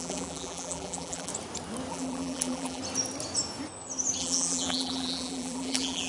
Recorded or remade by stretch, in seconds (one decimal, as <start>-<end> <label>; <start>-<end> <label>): 0.0-1.3 remade; 1.3-1.9 recorded; 1.9-2.8 remade; 2.8-4.2 recorded; 4.2-6.1 remade